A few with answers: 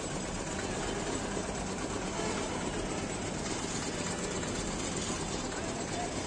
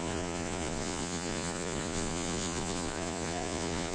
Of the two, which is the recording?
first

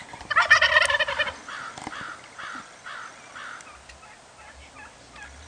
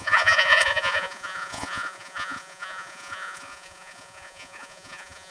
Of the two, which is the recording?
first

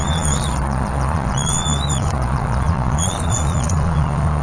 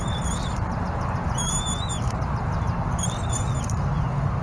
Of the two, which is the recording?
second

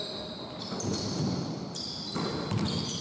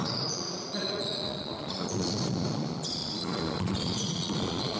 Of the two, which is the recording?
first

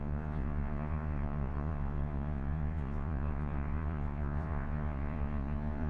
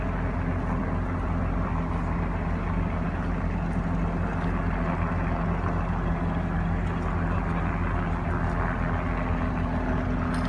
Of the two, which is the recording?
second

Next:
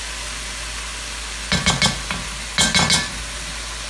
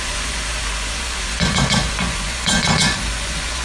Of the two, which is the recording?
first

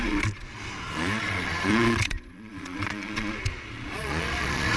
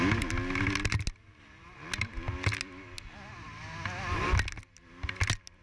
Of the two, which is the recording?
second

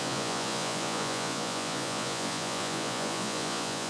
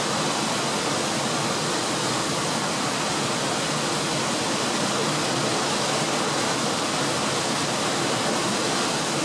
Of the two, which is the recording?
second